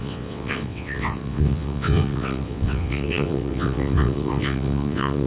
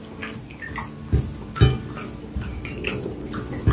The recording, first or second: second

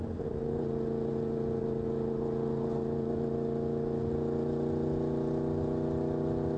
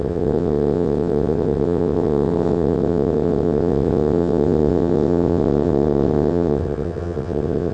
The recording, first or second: first